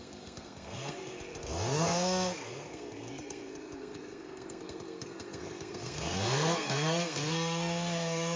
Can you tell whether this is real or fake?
fake